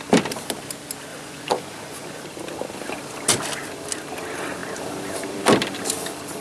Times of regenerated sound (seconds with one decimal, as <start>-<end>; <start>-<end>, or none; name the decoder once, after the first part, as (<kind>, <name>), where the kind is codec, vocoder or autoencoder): 1.1-2.2 (vocoder, Vocos)